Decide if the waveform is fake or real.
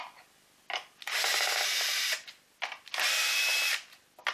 real